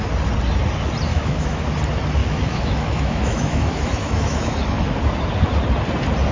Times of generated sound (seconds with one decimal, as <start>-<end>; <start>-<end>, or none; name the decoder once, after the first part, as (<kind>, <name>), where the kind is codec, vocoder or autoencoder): 1.1-1.6 (autoencoder, DAC-VAE); 2.2-4.9

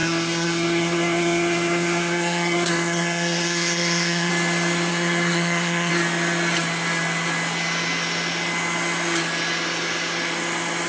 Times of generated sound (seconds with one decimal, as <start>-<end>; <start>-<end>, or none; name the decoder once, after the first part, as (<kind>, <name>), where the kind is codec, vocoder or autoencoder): 0.0-4.3 (codec, SNAC); 4.9-5.9

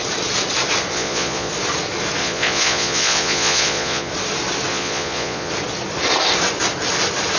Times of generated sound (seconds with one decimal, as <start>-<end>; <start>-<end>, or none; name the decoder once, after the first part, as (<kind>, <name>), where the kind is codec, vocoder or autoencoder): 0.9-1.5 (vocoder, Vocos); 2.2-4.1; 4.7-5.5

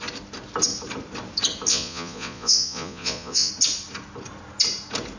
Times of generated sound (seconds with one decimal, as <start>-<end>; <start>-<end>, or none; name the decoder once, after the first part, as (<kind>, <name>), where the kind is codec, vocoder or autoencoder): 1.7-3.5 (vocoder, Vocos)